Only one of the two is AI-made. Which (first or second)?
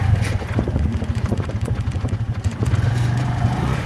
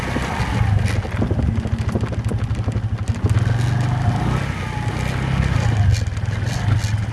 first